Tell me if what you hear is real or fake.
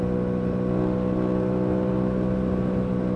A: real